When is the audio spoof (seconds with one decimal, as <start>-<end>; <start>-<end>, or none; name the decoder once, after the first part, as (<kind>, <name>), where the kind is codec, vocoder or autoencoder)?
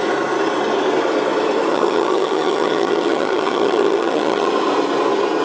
1.7-4.5 (vocoder, HiFi-GAN)